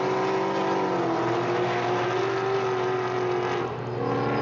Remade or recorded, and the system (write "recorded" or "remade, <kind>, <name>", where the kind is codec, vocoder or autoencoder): recorded